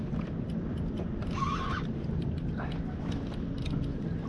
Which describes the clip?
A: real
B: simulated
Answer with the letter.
A